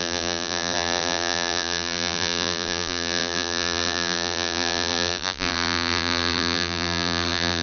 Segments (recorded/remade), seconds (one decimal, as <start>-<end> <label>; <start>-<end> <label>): 0.0-7.6 remade